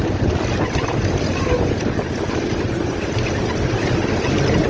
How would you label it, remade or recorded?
recorded